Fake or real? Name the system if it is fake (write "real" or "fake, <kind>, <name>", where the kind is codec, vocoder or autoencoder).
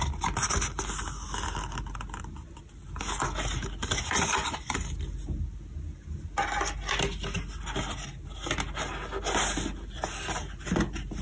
real